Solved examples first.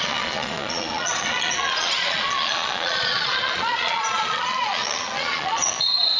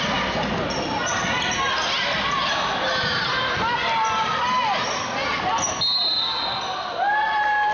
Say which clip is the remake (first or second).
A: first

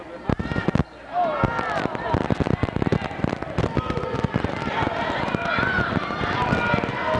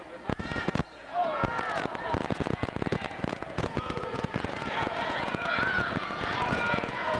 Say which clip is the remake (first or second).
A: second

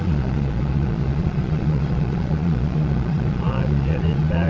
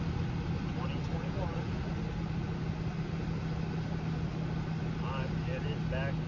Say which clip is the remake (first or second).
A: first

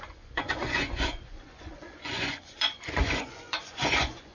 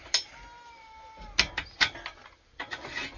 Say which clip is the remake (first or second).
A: first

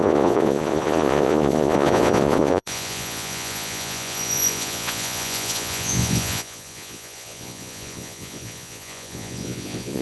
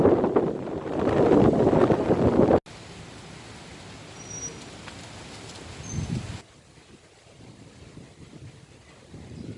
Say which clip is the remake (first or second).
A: first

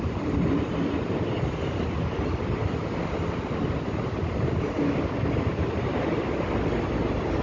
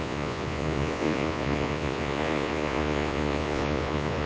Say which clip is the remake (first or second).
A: second